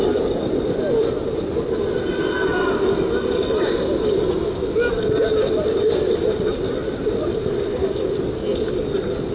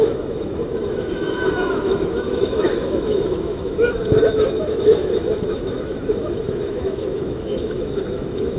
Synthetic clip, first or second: second